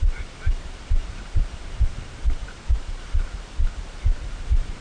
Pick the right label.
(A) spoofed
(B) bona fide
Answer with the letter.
A